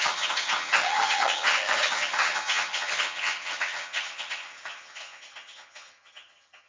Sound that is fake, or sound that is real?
fake